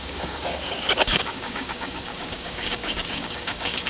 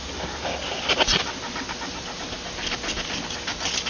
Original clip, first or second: second